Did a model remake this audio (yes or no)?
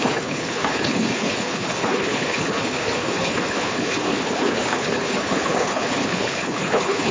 yes